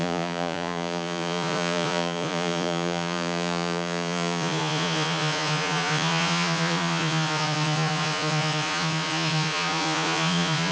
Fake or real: fake